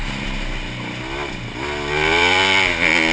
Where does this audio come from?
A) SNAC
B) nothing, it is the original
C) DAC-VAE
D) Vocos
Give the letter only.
B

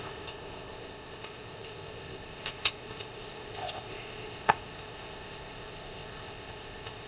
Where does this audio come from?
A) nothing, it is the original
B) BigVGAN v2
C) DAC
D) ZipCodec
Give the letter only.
D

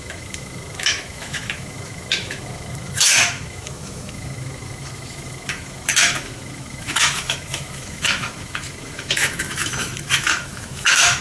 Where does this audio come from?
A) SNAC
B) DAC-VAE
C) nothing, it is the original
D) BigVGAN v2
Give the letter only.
B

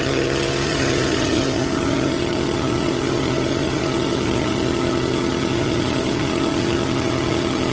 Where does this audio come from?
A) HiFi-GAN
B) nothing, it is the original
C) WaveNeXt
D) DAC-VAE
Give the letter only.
A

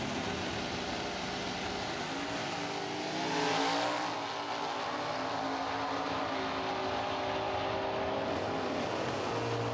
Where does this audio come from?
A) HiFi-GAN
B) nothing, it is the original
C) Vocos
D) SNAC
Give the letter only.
B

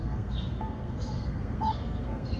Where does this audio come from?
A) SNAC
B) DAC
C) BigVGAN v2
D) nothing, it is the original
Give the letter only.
A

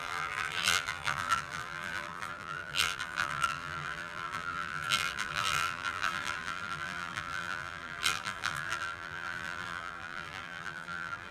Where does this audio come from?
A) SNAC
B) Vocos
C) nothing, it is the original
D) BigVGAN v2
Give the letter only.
D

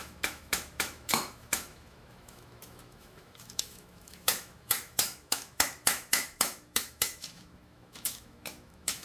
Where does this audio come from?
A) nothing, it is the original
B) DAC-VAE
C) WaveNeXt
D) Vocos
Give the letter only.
B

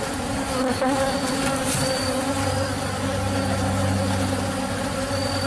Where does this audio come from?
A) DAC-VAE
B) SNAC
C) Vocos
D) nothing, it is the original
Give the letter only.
D